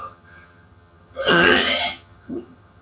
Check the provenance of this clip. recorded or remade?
remade